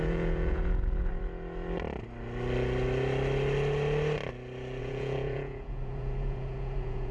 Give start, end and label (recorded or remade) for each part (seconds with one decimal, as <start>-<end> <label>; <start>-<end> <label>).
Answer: 0.0-1.1 remade; 1.1-4.8 recorded; 4.8-7.1 remade